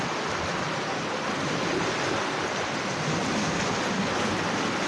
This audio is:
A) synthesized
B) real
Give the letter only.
B